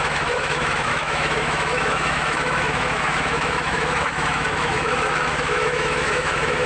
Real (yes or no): no